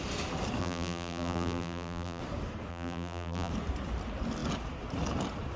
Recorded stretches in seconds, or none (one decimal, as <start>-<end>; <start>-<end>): 0.0-0.6; 2.2-2.7; 3.5-5.6